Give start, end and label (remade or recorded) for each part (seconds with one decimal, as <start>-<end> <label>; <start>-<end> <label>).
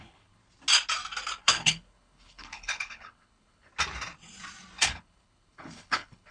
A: 0.0-0.4 remade; 0.4-1.4 recorded; 1.4-3.7 remade; 3.7-4.8 recorded; 4.8-6.3 remade